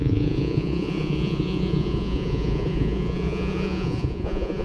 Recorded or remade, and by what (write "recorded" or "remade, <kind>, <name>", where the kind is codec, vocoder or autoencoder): remade, vocoder, Vocos